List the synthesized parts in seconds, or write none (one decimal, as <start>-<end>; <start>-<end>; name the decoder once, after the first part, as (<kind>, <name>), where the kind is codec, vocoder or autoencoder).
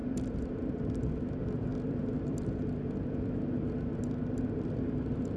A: 0.6-1.7 (vocoder, BigVGAN v2); 4.8-5.4